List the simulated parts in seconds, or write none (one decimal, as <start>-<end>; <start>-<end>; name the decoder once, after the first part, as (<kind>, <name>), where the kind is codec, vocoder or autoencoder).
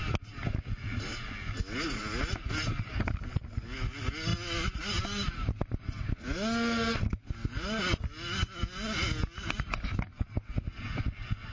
none